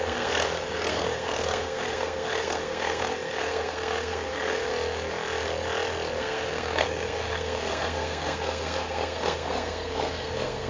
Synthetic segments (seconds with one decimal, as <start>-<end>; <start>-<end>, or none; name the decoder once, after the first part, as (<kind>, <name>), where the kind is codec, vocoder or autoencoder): 0.0-4.7 (codec, SNAC); 6.2-10.7